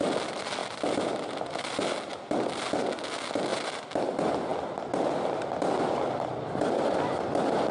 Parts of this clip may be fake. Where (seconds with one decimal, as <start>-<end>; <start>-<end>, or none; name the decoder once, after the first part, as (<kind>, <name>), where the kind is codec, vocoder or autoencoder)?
0.6-1.8 (vocoder, BigVGAN v2); 3.5-4.0